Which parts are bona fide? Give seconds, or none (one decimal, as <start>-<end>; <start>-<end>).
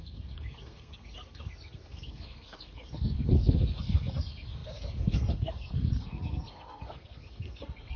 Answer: none